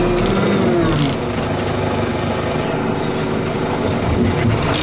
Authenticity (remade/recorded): recorded